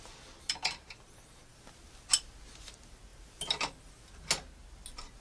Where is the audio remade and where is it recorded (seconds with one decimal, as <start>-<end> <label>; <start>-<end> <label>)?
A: 0.0-5.2 recorded